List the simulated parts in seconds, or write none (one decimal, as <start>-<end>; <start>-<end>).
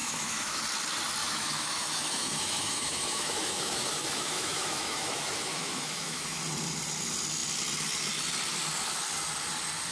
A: 0.0-0.6; 1.2-6.4